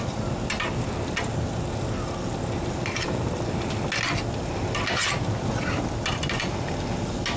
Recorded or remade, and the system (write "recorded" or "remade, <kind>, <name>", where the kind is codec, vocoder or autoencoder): recorded